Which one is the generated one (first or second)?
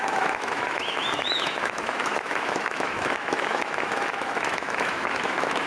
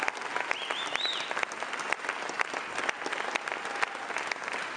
first